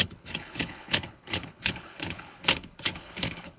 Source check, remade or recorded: remade